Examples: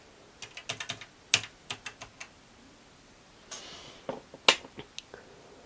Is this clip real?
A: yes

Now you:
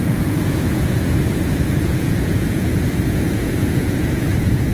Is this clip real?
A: no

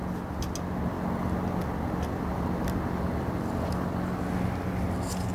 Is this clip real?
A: yes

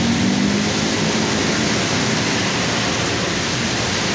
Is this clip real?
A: yes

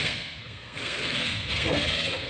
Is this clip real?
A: no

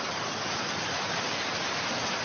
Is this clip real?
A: yes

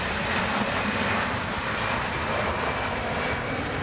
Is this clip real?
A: no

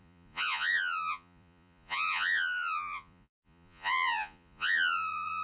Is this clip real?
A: no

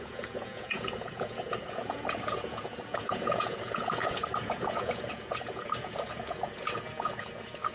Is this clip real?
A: no